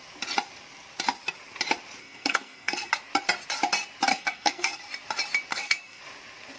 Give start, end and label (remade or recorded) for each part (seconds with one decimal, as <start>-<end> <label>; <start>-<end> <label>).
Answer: 0.0-2.0 recorded; 2.0-2.9 remade; 2.9-4.1 recorded; 4.1-4.8 remade; 4.8-5.5 recorded; 5.5-6.0 remade; 6.0-6.6 recorded

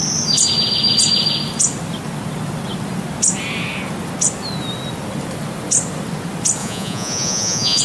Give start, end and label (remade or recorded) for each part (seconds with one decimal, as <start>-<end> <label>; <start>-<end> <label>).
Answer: 0.0-6.6 recorded; 6.6-7.8 remade

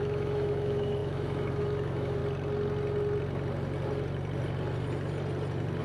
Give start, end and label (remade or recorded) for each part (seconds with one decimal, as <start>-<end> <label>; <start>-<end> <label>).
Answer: 0.0-2.2 remade; 2.2-5.8 recorded

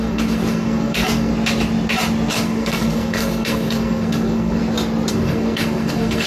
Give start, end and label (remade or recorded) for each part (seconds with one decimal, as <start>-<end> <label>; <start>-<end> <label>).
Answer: 0.0-1.3 remade; 1.3-2.3 recorded; 2.3-4.6 remade; 4.6-5.1 recorded; 5.1-6.3 remade